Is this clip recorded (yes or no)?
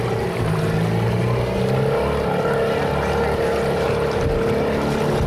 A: yes